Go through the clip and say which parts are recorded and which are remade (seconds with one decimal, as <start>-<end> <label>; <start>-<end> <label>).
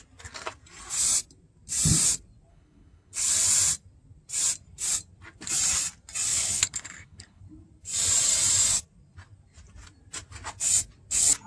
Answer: 0.0-2.5 recorded; 2.5-3.3 remade; 3.3-6.3 recorded; 6.3-7.4 remade; 7.4-11.5 recorded